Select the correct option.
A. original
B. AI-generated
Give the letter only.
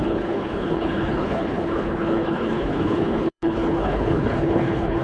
B